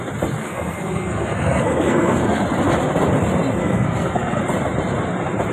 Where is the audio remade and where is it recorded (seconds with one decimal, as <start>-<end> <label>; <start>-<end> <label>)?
0.0-0.4 recorded; 0.4-2.4 remade; 2.4-3.6 recorded; 3.6-4.4 remade; 4.4-5.5 recorded